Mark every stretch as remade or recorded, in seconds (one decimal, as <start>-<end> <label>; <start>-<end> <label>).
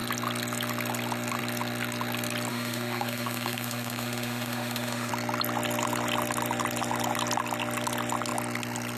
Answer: 0.0-2.5 recorded; 2.5-5.1 remade; 5.1-9.0 recorded